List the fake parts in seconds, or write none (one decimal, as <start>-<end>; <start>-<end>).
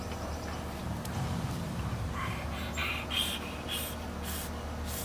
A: 0.0-2.8